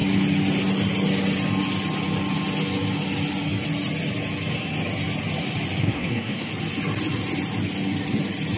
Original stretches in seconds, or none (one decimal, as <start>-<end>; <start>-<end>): 0.0-5.8; 6.5-8.6